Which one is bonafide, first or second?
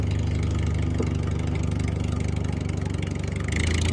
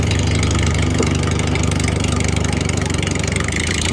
first